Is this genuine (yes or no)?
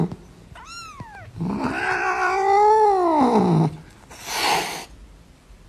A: yes